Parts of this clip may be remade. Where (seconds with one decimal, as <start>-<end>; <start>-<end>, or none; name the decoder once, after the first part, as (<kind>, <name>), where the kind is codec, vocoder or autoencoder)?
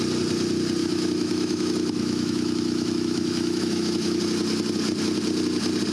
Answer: 0.8-4.2 (autoencoder, DAC-VAE)